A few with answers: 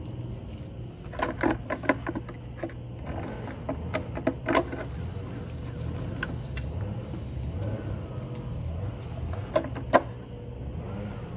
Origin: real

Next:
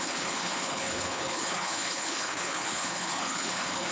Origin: fake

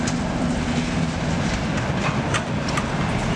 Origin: real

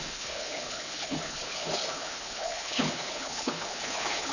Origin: fake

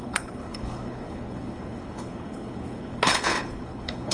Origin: fake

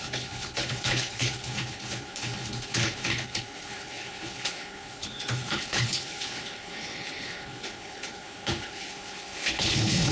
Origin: fake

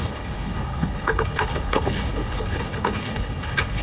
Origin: fake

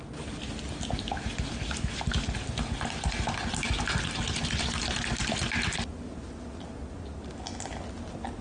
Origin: real